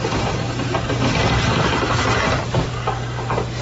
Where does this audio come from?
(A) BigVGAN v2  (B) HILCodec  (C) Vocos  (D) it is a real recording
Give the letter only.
A